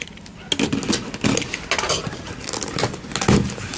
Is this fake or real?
real